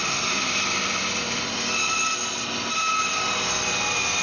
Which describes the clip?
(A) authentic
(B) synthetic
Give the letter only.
A